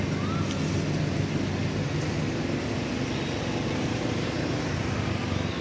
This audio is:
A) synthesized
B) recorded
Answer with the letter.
B